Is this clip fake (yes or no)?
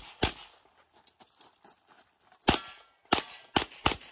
no